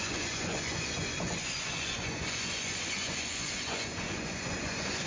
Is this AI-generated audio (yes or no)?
yes